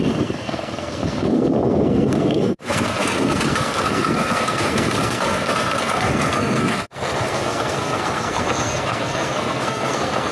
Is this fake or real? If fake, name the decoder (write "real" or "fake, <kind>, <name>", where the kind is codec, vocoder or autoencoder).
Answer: fake, codec, SNAC